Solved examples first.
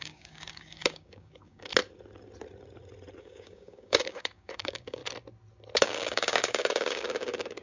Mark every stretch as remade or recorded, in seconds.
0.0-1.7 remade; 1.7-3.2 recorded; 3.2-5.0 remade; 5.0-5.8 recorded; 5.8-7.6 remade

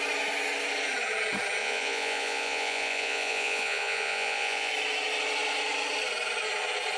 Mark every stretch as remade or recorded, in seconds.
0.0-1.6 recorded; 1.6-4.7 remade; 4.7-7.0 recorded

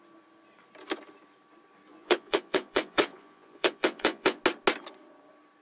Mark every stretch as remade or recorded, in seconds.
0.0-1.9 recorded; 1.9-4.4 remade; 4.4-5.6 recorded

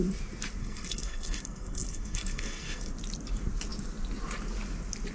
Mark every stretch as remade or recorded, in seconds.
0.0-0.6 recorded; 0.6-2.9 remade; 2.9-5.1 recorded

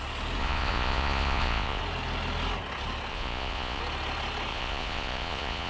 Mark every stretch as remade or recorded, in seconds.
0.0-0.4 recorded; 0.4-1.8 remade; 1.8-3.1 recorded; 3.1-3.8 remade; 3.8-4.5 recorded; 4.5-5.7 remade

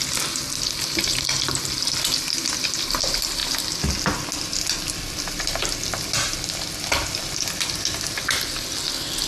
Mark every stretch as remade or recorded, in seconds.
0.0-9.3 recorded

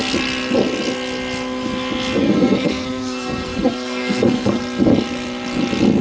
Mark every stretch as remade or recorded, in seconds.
0.0-2.2 recorded; 2.2-4.6 remade; 4.6-6.0 recorded

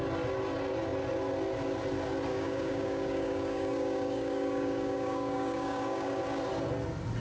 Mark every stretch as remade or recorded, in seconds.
0.0-2.3 recorded; 2.3-6.2 remade; 6.2-7.2 recorded